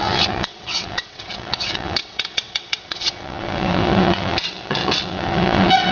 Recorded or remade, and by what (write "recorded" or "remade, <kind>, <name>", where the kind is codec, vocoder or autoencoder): remade, vocoder, WaveNeXt